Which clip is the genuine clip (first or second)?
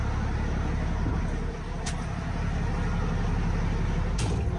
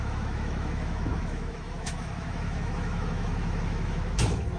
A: first